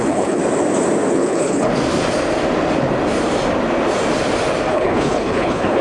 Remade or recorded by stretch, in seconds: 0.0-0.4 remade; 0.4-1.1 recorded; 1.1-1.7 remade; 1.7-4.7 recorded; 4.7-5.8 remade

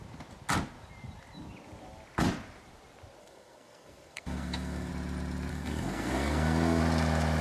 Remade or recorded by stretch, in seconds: 0.0-3.2 recorded; 3.2-4.9 remade; 4.9-5.5 recorded; 5.5-6.8 remade; 6.8-7.4 recorded

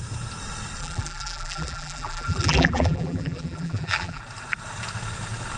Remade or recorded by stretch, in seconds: 0.0-0.8 recorded; 0.8-4.2 remade; 4.2-5.6 recorded